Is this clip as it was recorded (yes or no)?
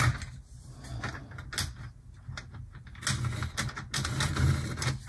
yes